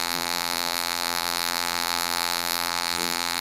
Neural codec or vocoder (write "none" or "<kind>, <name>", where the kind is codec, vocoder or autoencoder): vocoder, BigVGAN v2